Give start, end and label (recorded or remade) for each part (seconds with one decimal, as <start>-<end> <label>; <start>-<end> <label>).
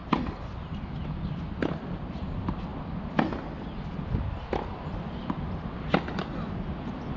0.0-7.2 recorded